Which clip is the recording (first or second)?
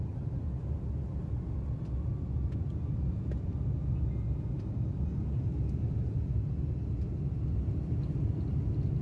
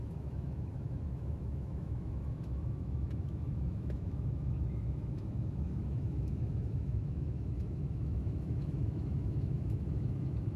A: first